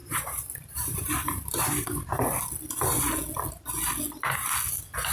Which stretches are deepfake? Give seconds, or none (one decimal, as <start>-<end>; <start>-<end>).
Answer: 0.0-2.1